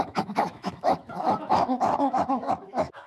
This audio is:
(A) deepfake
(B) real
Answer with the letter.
A